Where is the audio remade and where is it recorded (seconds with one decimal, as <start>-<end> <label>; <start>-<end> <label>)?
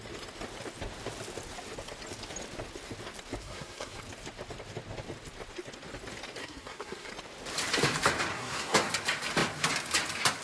0.0-3.4 recorded; 3.4-4.0 remade; 4.0-6.4 recorded; 6.4-7.1 remade; 7.1-8.3 recorded; 8.3-8.9 remade; 8.9-10.4 recorded